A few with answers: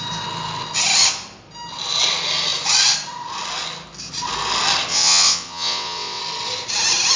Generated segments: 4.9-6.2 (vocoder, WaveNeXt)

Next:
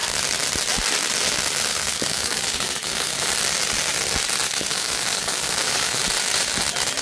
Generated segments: 1.7-3.3 (codec, DAC); 4.5-6.0

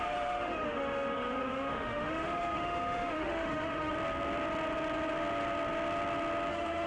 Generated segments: 0.0-3.9 (autoencoder, DAC-VAE); 6.5-6.9

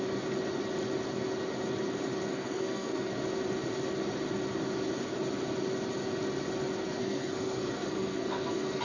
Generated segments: 2.3-3.1 (codec, SNAC); 7.0-8.8

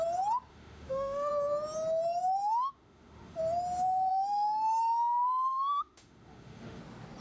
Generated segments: 0.5-1.3 (autoencoder, DAC-VAE); 2.4-3.4; 4.1-6.8

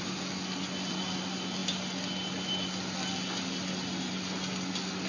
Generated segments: none

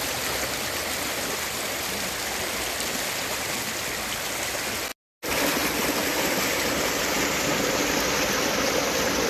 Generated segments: none

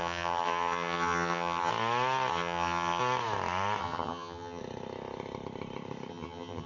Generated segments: 0.0-1.7 (vocoder, HiFi-GAN); 2.3-3.0; 3.8-4.6; 6.1-6.7